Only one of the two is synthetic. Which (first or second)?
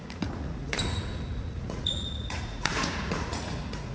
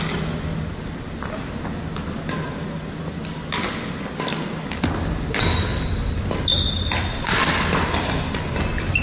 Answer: first